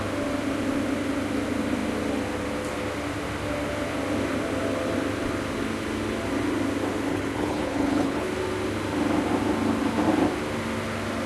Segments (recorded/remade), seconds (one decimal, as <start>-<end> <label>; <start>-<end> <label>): 0.0-7.1 recorded; 7.1-8.3 remade; 8.3-11.3 recorded

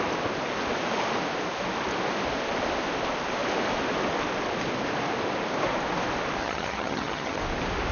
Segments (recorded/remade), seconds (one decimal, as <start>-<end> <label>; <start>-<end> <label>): 0.0-6.4 recorded; 6.4-7.4 remade; 7.4-7.9 recorded

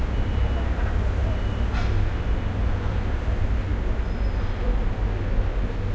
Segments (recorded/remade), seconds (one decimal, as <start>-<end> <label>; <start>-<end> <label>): 0.0-5.9 recorded

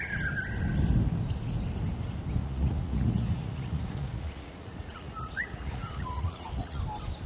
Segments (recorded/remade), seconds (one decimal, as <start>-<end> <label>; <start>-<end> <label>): 0.0-2.4 recorded; 2.4-6.8 remade; 6.8-7.3 recorded